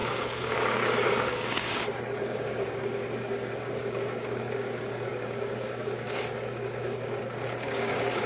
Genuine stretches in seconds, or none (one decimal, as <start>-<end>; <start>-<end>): none